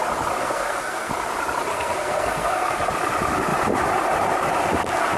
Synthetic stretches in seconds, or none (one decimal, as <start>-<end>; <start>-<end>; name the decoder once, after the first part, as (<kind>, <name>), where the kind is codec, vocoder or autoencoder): 0.4-1.1 (codec, SNAC); 1.7-2.9